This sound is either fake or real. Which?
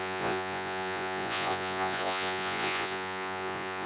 fake